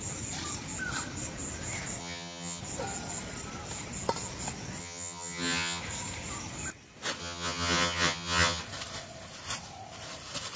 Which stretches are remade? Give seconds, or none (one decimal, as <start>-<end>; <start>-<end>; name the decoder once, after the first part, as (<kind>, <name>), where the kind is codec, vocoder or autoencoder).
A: 2.0-2.6 (vocoder, HiFi-GAN); 4.8-5.8; 7.2-8.6